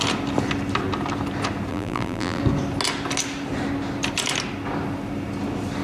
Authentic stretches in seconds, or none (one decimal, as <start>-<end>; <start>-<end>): 0.0-1.7; 2.4-5.8